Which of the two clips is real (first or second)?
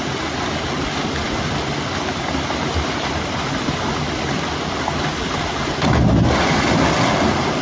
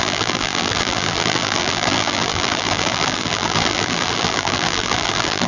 first